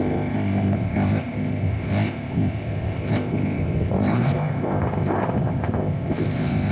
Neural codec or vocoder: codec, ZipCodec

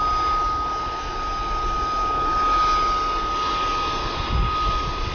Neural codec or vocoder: none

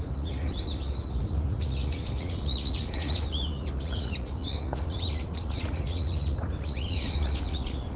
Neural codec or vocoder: vocoder, Vocos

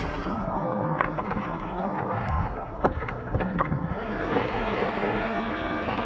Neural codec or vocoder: codec, SNAC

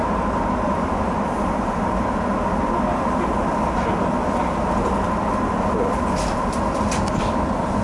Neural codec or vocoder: none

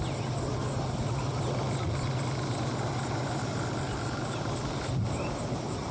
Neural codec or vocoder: none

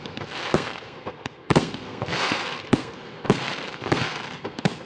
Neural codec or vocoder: codec, SNAC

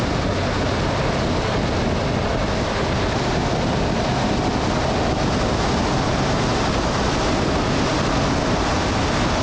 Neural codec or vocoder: none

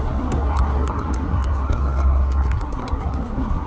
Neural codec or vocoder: codec, SNAC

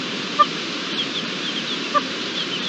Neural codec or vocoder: vocoder, BigVGAN v2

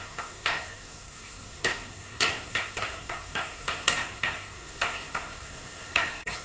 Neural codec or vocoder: codec, SNAC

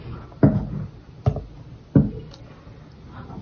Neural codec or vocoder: none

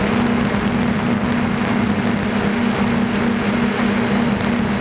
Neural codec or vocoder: none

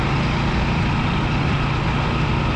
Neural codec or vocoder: none